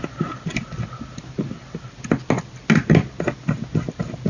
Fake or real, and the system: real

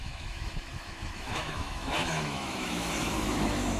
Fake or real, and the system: fake, autoencoder, DAC-VAE